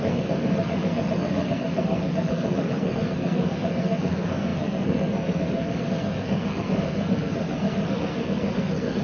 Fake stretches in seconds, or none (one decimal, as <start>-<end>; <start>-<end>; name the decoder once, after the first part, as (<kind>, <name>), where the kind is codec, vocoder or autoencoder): 0.0-9.0 (codec, SNAC)